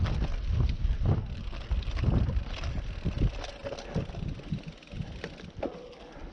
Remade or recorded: recorded